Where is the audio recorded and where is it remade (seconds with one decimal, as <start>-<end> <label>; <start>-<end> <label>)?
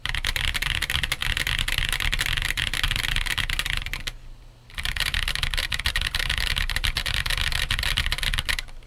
0.0-8.9 recorded